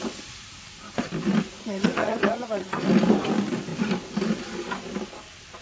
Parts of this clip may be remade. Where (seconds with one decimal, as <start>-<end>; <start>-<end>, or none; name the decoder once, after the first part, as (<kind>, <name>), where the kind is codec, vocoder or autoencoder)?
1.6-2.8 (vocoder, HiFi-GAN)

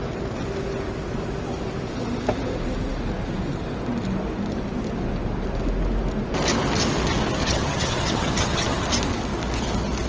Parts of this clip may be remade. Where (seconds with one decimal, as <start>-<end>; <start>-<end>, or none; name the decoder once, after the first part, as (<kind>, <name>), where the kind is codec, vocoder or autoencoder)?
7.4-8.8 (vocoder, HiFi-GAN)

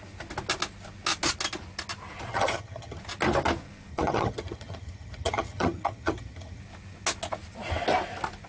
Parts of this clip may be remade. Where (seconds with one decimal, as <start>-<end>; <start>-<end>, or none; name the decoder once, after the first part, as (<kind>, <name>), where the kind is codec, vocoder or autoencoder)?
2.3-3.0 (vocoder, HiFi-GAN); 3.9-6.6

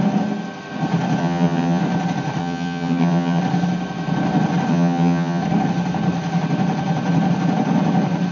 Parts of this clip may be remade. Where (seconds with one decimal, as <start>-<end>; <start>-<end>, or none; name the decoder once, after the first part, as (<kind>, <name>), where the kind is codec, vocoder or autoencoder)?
1.2-1.8 (vocoder, HiFi-GAN); 2.4-3.4; 4.7-5.4

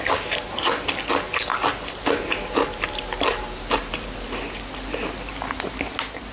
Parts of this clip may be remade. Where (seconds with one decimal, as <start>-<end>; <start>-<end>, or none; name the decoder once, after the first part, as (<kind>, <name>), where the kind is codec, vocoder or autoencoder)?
none

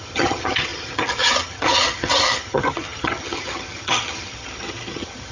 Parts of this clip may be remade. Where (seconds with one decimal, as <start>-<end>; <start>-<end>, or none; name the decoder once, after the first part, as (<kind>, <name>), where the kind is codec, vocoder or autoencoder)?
0.0-5.3 (vocoder, HiFi-GAN)